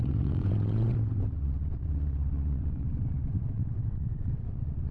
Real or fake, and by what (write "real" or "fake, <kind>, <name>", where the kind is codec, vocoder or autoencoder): fake, vocoder, WaveNeXt